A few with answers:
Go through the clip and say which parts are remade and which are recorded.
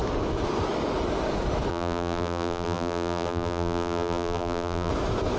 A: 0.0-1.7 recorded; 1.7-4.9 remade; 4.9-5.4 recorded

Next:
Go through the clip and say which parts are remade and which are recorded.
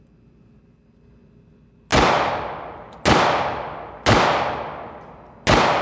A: 0.0-5.8 recorded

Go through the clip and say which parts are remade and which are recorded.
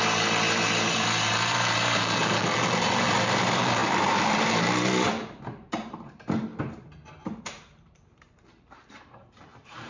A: 0.0-6.5 remade; 6.5-7.4 recorded; 7.4-9.9 remade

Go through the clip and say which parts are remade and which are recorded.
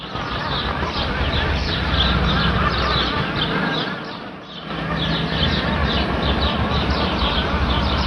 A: 0.0-5.8 recorded; 5.8-8.1 remade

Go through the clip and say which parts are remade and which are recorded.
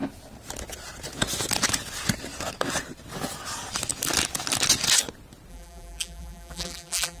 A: 0.0-5.5 recorded; 5.5-7.2 remade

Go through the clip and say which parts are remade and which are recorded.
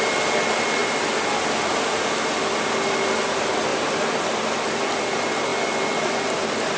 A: 0.0-3.7 recorded; 3.7-5.0 remade; 5.0-5.5 recorded; 5.5-6.8 remade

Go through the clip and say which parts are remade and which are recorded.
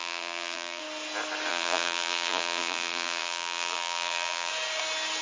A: 0.0-0.8 remade; 0.8-1.5 recorded; 1.5-4.5 remade; 4.5-5.2 recorded